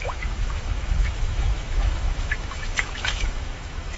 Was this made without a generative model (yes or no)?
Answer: no